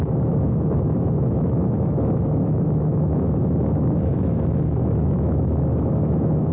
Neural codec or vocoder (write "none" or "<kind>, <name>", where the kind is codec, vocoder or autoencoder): autoencoder, DAC-VAE